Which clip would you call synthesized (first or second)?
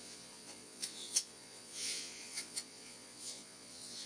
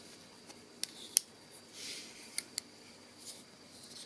first